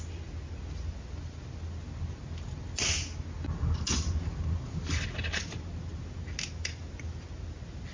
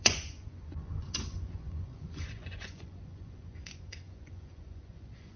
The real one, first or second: first